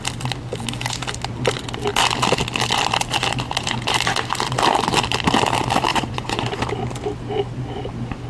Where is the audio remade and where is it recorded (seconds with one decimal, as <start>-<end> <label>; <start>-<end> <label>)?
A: 0.0-5.9 recorded; 5.9-6.6 remade; 6.6-8.3 recorded